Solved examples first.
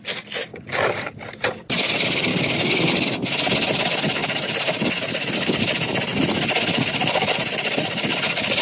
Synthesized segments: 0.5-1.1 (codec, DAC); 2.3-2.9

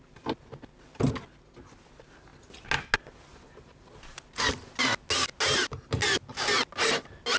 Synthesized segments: none

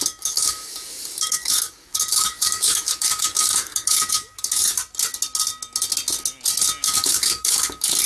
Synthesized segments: 0.0-4.8 (codec, DAC); 6.8-8.1